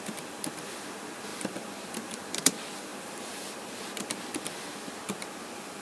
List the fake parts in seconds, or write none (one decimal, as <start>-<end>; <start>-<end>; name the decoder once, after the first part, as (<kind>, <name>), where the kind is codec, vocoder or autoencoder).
none